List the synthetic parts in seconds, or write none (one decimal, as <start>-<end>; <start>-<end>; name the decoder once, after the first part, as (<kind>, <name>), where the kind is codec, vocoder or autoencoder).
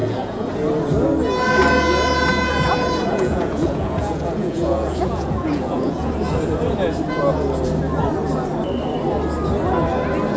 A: 0.0-0.5 (vocoder, Vocos); 2.3-6.1